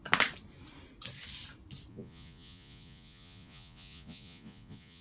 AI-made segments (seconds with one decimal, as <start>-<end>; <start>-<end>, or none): 1.9-5.0